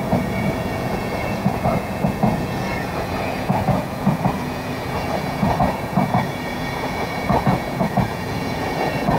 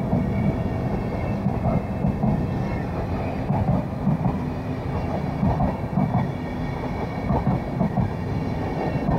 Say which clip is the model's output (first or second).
first